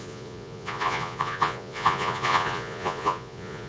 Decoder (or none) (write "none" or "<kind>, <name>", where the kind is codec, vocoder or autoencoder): vocoder, Vocos